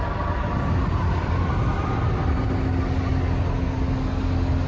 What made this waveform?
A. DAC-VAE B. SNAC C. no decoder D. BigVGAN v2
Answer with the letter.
C